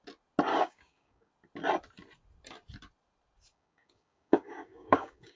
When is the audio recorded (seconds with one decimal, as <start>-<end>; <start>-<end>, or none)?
0.0-0.5; 1.3-3.5